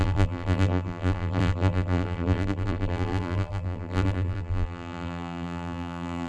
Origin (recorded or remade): remade